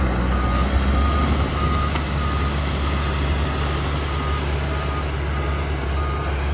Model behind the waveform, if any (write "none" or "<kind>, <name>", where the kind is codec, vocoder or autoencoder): none